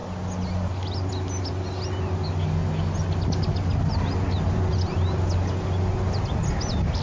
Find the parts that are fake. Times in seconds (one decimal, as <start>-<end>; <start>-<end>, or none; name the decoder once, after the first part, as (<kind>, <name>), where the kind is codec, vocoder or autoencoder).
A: none